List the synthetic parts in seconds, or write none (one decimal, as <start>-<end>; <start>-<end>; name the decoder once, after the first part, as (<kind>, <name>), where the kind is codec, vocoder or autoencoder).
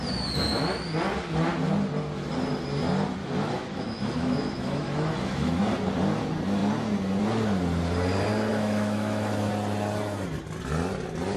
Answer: 3.2-5.6 (autoencoder, DAC-VAE); 8.5-9.5